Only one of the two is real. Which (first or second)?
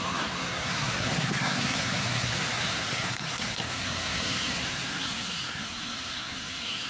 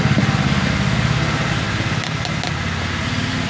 second